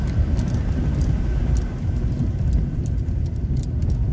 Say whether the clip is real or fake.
real